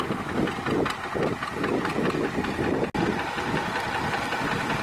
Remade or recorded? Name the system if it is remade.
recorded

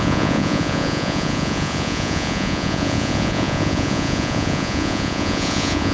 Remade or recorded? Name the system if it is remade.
remade, vocoder, Vocos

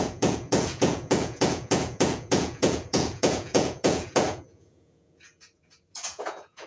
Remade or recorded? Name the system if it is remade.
remade, vocoder, Vocos